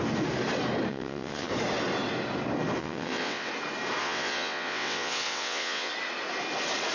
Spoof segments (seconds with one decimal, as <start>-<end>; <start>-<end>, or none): 0.9-1.5; 2.8-3.5; 4.0-5.9